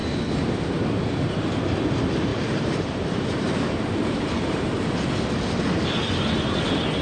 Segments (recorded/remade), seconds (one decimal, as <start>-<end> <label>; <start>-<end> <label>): 0.0-1.9 remade; 1.9-2.3 recorded; 2.3-4.9 remade; 4.9-7.0 recorded